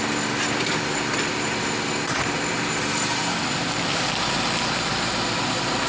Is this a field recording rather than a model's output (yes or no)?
yes